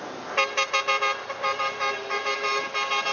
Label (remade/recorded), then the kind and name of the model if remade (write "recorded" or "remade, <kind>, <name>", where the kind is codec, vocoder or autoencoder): recorded